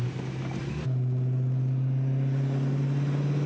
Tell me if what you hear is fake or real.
real